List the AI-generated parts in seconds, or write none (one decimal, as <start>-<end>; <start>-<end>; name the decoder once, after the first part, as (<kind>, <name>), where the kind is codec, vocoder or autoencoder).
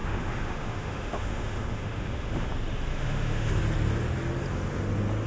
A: 0.0-2.5 (autoencoder, DAC-VAE); 2.9-3.5